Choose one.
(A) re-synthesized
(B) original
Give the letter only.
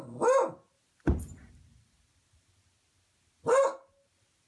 B